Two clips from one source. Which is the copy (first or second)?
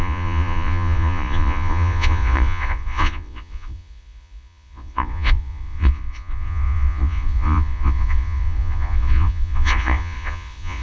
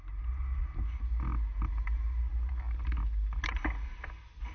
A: first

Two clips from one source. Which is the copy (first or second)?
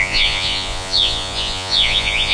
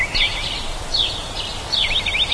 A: first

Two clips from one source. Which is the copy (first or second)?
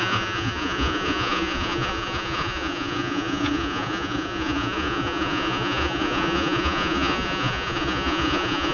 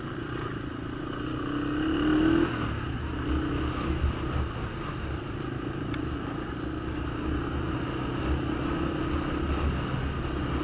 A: first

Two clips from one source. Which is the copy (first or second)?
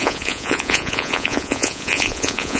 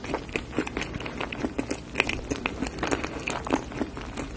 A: first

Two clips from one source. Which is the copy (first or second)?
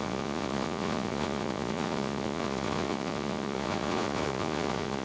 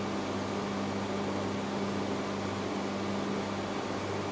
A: first